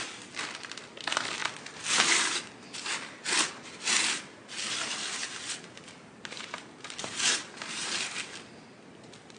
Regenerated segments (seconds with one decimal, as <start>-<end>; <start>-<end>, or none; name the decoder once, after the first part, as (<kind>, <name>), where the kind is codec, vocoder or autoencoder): 5.2-7.9 (vocoder, BigVGAN v2)